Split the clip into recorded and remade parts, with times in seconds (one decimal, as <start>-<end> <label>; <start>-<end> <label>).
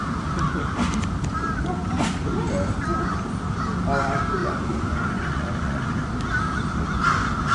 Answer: 0.0-4.4 recorded; 4.4-5.8 remade; 5.8-7.5 recorded